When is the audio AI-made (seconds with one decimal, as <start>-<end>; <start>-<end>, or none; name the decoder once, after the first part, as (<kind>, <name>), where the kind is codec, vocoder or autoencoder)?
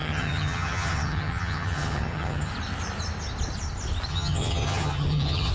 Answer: 0.0-2.5 (vocoder, HiFi-GAN); 4.1-5.5